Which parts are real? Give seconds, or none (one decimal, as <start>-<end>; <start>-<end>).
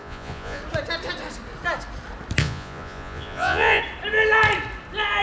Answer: 0.6-2.4; 3.8-5.2